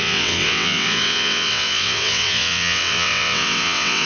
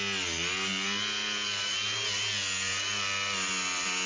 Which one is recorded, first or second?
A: second